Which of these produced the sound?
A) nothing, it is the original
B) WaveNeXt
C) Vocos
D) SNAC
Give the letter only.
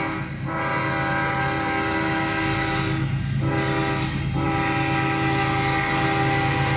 A